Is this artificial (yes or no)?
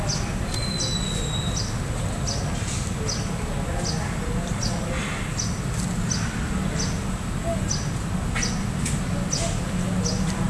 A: no